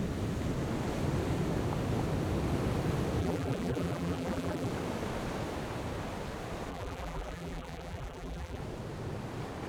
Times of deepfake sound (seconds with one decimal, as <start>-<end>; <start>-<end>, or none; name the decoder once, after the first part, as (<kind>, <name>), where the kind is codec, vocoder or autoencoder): 3.2-4.7 (vocoder, BigVGAN v2); 6.7-8.6